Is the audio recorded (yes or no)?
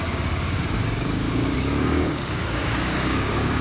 no